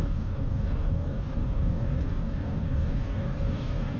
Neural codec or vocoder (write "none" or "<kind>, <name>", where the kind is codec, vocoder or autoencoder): codec, DAC